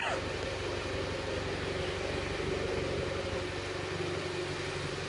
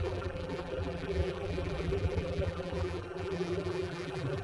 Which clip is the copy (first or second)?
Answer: second